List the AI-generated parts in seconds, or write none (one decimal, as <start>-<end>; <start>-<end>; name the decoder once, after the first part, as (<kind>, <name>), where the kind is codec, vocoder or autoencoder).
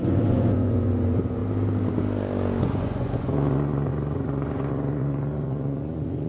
0.0-1.4 (vocoder, Vocos); 2.6-6.3